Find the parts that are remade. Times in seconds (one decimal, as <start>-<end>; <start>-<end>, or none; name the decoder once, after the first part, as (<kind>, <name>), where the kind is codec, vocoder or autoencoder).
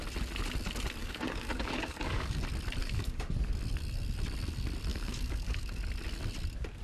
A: 1.0-2.4 (codec, DAC); 2.8-3.3; 4.9-5.8